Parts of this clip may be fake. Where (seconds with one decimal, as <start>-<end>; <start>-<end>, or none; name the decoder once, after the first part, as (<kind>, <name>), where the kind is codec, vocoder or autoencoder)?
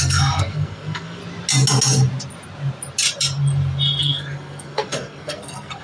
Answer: 0.0-1.2 (codec, SNAC); 4.0-5.8